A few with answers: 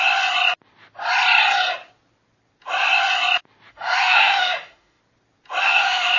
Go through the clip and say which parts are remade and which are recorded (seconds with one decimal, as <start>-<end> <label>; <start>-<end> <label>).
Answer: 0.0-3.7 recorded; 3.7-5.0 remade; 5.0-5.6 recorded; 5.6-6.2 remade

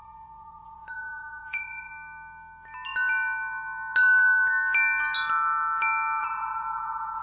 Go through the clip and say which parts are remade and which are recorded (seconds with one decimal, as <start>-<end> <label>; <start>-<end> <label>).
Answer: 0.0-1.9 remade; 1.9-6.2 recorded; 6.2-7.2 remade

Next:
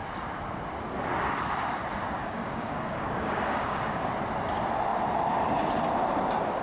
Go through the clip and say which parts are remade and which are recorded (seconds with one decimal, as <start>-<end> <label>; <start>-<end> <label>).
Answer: 0.0-2.2 recorded; 2.2-4.1 remade; 4.1-6.6 recorded

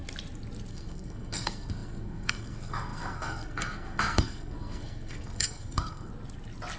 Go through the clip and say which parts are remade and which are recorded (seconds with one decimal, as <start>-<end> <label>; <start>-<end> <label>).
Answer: 0.0-0.7 recorded; 0.7-6.1 remade; 6.1-6.8 recorded